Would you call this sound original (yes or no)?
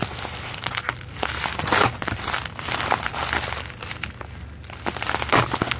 yes